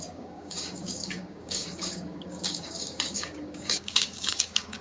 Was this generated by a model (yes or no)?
yes